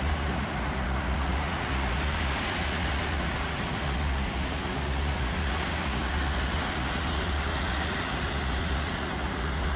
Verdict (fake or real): fake